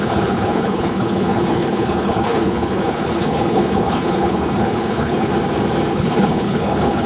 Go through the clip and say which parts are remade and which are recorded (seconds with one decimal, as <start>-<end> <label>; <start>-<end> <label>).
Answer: 0.0-5.3 remade; 5.3-5.9 recorded; 5.9-7.1 remade